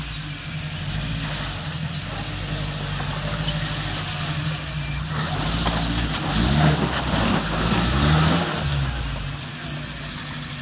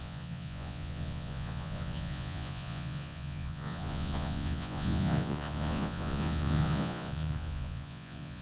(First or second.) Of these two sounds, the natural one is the first